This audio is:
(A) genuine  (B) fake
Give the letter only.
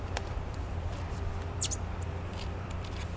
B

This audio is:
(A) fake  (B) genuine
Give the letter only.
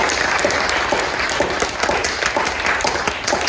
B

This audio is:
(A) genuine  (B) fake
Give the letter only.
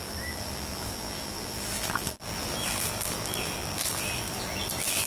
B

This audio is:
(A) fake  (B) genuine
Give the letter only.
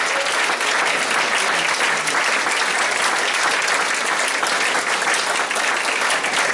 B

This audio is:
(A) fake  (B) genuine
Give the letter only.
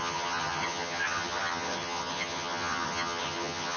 A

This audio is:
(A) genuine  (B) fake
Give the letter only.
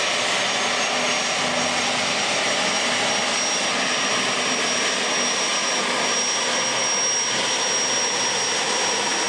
A